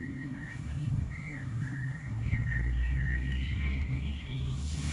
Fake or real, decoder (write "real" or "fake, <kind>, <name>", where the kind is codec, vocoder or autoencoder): fake, codec, SNAC